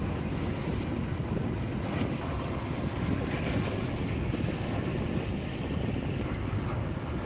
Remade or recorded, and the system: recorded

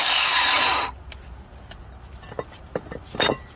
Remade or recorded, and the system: recorded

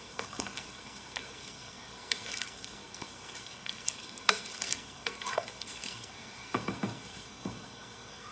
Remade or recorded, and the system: remade, codec, SNAC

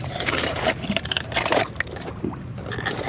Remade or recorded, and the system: remade, vocoder, BigVGAN v2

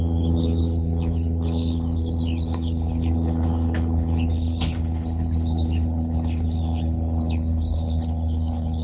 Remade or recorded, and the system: remade, codec, HILCodec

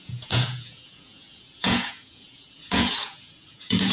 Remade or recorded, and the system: remade, vocoder, Vocos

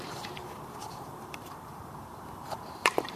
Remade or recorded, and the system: remade, vocoder, BigVGAN v2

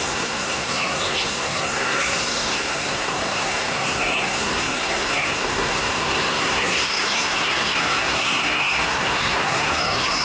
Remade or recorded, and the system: remade, codec, SNAC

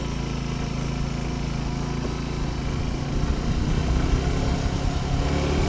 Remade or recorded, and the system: recorded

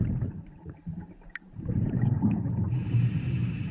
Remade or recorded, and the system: remade, vocoder, BigVGAN v2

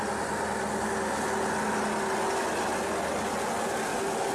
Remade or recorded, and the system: recorded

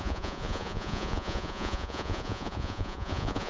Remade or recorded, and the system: remade, vocoder, Vocos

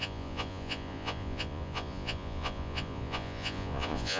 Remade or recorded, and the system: remade, vocoder, Vocos